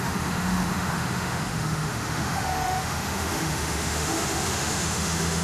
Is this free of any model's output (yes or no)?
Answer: no